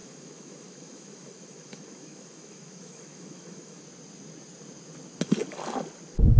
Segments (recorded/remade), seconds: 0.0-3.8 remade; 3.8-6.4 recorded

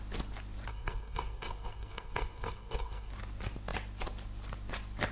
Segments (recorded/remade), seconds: 0.0-0.7 recorded; 0.7-3.1 remade; 3.1-5.1 recorded

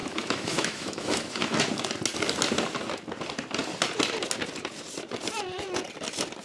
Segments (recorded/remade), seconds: 0.0-1.6 remade; 1.6-6.4 recorded

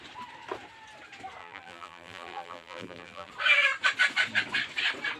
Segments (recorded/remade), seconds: 0.0-1.4 recorded; 1.4-3.3 remade; 3.3-5.2 recorded

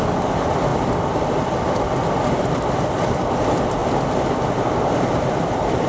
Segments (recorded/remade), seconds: 0.0-0.7 remade; 0.7-2.3 recorded; 2.3-3.8 remade; 3.8-4.8 recorded; 4.8-5.9 remade

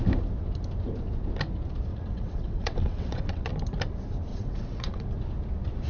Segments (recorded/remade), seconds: 0.0-1.9 recorded; 1.9-3.5 remade; 3.5-4.3 recorded; 4.3-5.1 remade; 5.1-5.9 recorded